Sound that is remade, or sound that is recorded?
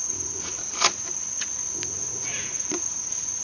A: remade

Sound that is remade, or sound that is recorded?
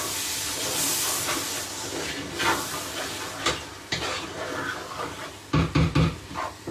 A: recorded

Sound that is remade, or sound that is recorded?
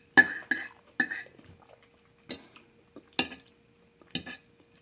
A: recorded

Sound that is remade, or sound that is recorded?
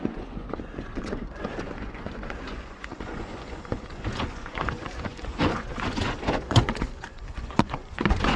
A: remade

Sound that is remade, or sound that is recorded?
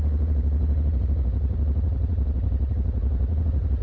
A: remade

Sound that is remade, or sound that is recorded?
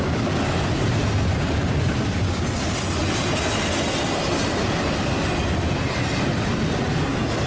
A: recorded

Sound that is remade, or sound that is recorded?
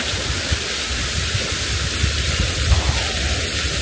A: recorded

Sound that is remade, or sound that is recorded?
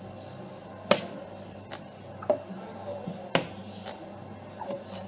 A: recorded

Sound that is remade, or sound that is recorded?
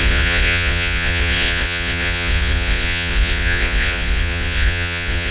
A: remade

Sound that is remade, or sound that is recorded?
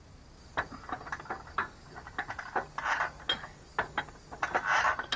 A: recorded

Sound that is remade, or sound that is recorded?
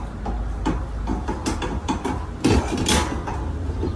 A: recorded